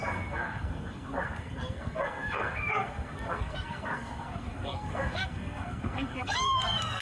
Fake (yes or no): yes